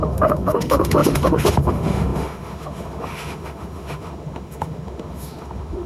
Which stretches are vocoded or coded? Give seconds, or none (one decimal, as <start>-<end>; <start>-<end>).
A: 0.0-5.9